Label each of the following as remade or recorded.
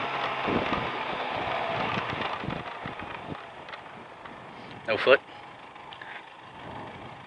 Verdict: recorded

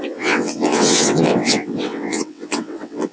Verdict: remade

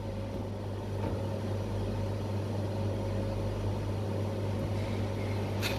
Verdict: recorded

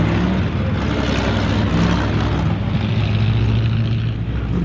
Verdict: recorded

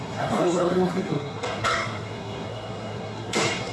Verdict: remade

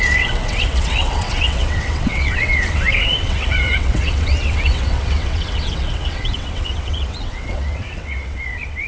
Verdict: remade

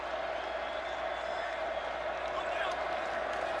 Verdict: recorded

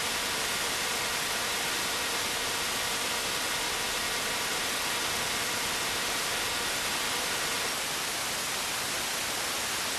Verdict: recorded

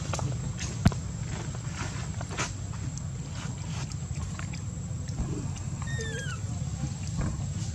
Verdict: recorded